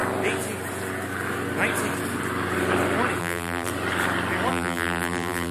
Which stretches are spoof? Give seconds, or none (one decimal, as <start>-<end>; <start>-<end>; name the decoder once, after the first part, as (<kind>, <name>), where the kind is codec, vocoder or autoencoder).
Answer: 3.2-3.7 (vocoder, BigVGAN v2); 4.5-5.5